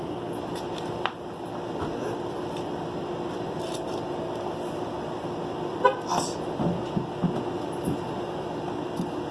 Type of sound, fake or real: real